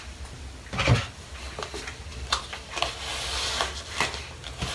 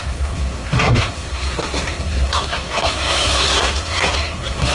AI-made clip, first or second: second